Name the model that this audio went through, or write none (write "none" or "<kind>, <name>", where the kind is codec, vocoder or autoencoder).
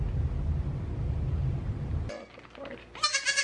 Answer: none